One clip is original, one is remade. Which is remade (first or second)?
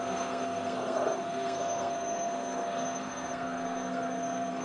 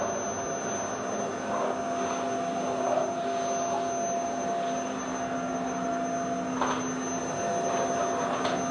first